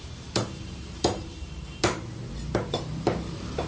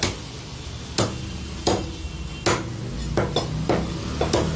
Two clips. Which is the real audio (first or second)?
second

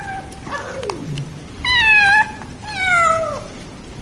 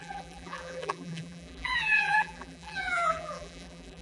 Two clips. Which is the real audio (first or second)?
first